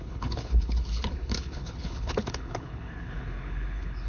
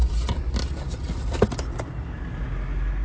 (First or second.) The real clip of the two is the second